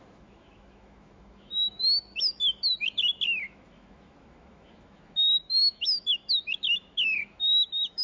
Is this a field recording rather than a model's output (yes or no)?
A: no